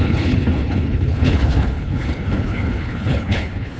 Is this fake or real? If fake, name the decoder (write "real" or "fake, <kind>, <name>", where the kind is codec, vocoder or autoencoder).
fake, codec, HILCodec